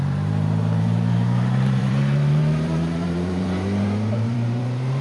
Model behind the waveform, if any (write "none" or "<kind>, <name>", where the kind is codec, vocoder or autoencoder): vocoder, BigVGAN v2